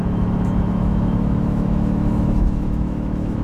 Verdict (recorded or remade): remade